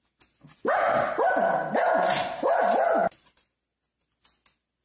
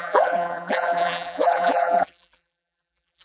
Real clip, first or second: first